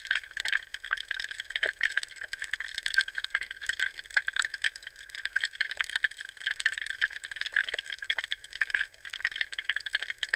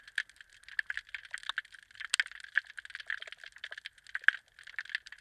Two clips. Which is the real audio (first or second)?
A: second